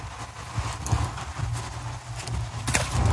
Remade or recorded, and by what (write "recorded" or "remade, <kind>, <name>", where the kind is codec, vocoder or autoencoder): recorded